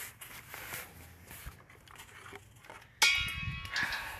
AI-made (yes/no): no